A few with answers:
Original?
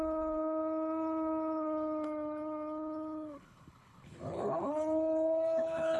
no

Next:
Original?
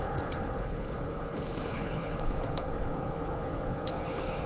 no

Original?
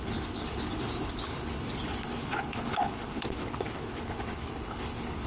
no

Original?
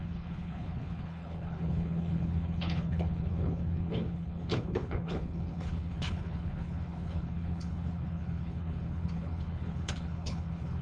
no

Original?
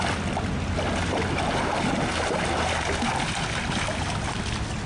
yes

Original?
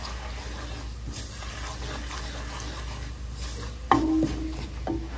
yes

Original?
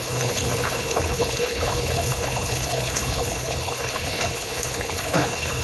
no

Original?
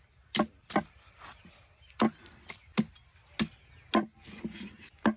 yes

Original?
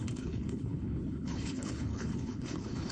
no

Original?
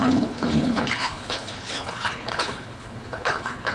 no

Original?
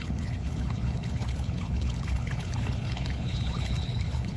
no